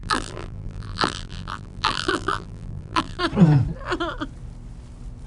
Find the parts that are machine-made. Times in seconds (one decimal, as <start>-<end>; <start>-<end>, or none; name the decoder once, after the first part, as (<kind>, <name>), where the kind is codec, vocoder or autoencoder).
0.0-3.2 (vocoder, BigVGAN v2)